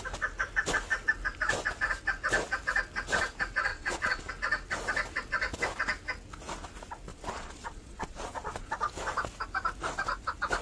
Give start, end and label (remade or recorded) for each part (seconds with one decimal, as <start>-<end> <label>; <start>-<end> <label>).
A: 0.0-3.7 recorded; 3.7-4.3 remade; 4.3-7.1 recorded; 7.1-8.7 remade; 8.7-10.6 recorded